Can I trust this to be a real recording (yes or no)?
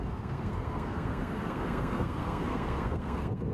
no